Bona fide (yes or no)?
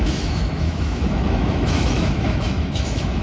no